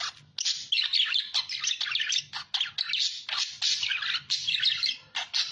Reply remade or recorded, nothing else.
recorded